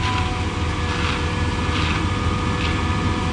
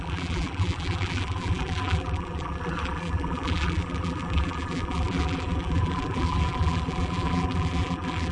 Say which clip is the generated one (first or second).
second